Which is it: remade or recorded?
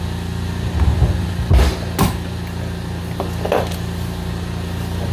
recorded